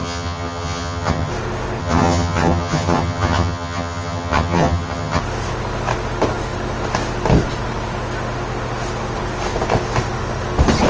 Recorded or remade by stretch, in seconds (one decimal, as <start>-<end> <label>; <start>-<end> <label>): 0.0-1.3 remade; 1.3-1.8 recorded; 1.8-5.2 remade; 5.2-10.9 recorded